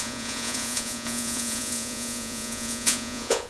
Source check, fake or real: fake